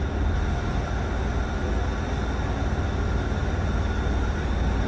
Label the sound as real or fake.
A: real